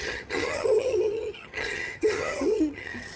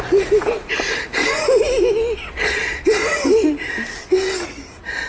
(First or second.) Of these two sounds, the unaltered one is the second